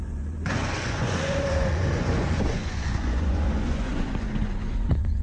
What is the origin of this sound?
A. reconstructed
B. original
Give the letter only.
A